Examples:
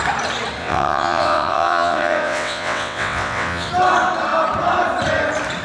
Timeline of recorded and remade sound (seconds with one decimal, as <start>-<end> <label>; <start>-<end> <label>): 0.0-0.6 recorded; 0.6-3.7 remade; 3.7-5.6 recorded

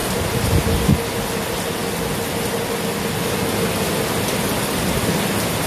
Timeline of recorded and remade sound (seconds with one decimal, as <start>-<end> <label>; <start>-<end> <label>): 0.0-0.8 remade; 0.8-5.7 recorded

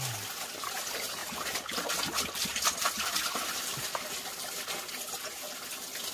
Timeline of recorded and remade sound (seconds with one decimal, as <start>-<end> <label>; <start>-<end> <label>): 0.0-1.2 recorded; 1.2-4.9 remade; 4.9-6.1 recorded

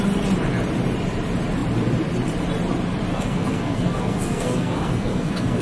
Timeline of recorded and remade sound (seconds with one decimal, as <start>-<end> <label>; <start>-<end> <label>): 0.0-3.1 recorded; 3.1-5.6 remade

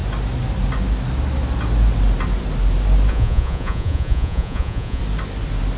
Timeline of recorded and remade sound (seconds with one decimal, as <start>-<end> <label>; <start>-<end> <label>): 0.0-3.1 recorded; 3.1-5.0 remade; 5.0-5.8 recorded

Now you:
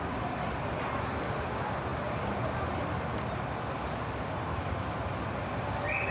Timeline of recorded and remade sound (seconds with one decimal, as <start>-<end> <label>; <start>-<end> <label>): 0.0-6.1 recorded

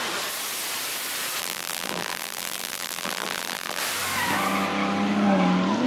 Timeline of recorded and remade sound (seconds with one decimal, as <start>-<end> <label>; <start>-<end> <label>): 0.0-1.4 recorded; 1.4-3.8 remade; 3.8-5.9 recorded

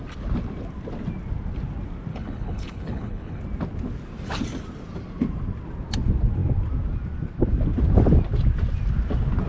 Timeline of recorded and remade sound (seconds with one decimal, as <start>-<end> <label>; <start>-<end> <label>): 0.0-2.1 recorded; 2.1-3.4 remade; 3.4-9.5 recorded